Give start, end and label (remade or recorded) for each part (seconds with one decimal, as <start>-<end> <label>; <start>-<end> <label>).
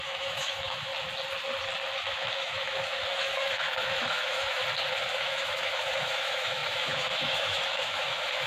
0.0-0.9 remade; 0.9-2.0 recorded; 2.0-4.6 remade; 4.6-5.1 recorded; 5.1-8.5 remade